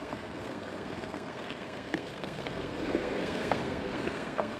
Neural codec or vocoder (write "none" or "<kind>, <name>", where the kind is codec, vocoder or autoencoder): codec, SNAC